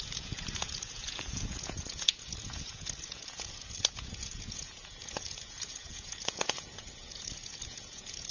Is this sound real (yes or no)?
no